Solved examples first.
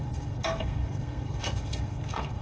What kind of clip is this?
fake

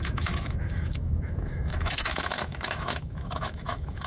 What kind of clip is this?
fake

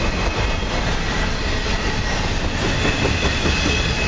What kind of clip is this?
real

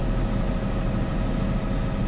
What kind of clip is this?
real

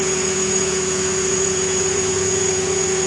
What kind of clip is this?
fake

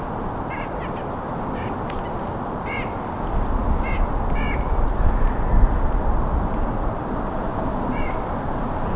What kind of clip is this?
real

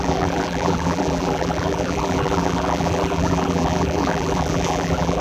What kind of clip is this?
fake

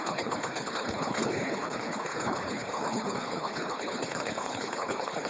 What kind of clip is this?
fake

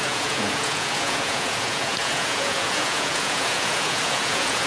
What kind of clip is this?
fake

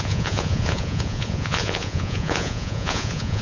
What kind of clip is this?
fake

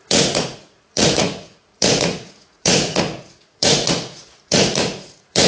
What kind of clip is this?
fake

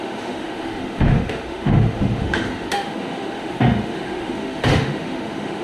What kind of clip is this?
fake